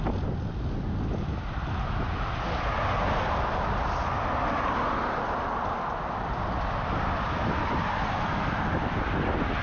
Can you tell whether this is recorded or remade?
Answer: recorded